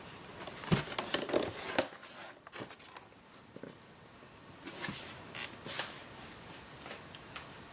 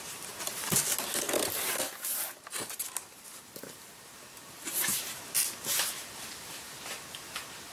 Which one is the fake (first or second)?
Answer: second